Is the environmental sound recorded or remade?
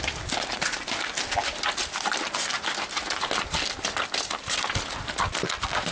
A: recorded